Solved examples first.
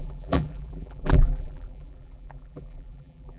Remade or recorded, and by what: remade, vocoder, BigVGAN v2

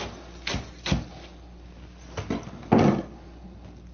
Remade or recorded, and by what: recorded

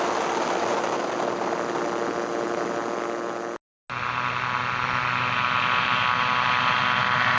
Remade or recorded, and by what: recorded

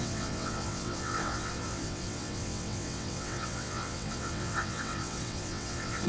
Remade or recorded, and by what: remade, vocoder, WaveNeXt